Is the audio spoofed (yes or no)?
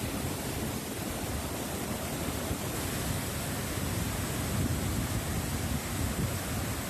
no